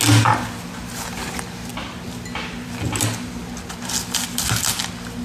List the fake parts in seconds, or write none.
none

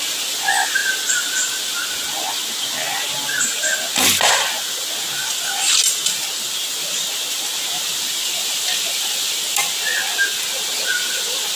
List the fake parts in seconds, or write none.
none

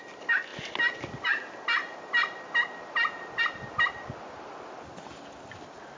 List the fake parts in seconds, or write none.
none

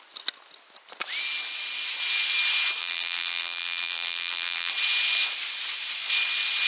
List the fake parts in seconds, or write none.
2.8-4.7 (vocoder, BigVGAN v2)